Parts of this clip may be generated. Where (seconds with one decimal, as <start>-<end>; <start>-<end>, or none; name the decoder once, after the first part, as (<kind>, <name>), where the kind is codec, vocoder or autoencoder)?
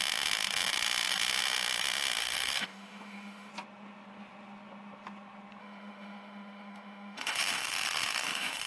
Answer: 2.2-3.5 (autoencoder, DAC-VAE); 5.6-8.7